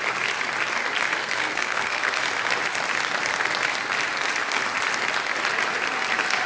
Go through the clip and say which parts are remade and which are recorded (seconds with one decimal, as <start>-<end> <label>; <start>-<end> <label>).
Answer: 0.0-1.2 recorded; 1.2-2.2 remade; 2.2-6.5 recorded